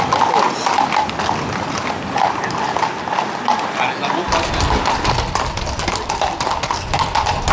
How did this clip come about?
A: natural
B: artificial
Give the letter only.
A